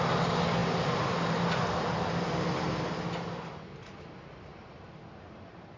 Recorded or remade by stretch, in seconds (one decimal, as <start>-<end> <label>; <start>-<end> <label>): 0.0-5.8 recorded